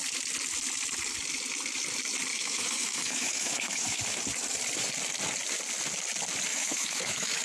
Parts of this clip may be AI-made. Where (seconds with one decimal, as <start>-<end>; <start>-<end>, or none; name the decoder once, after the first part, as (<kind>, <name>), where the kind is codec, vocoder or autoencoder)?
2.3-4.0 (autoencoder, DAC-VAE); 6.5-7.4